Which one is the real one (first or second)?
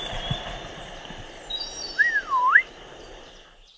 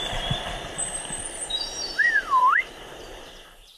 first